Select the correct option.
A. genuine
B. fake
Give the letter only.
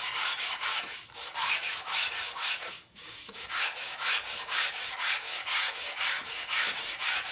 B